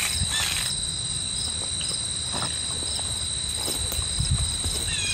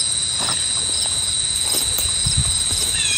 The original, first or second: first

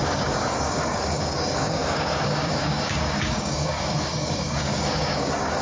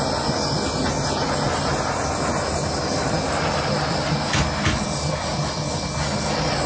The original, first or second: second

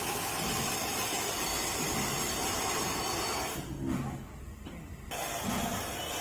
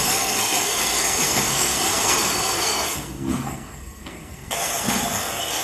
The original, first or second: first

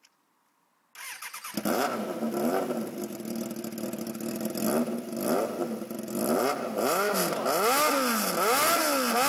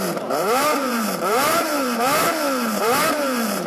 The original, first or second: first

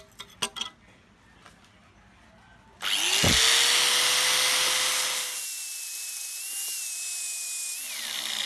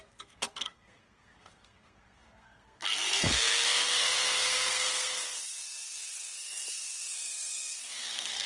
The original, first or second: first